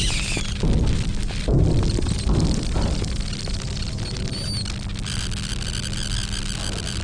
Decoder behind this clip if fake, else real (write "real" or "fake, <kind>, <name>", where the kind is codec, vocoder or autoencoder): real